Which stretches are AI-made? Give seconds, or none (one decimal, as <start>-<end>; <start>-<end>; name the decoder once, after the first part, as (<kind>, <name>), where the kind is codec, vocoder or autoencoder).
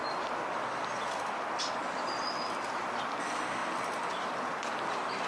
0.0-3.2 (vocoder, BigVGAN v2); 3.6-4.7